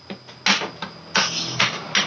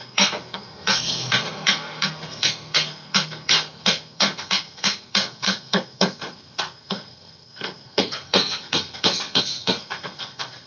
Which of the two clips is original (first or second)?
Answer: first